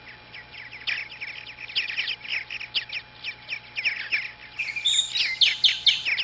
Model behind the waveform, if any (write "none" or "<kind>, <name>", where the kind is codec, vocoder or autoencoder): none